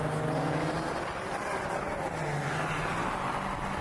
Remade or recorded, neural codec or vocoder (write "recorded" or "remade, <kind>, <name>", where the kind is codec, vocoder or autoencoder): recorded